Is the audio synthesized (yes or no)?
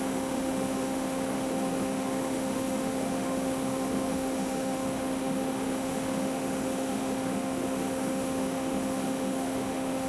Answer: yes